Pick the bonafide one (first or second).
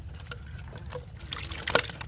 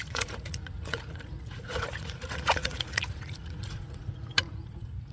first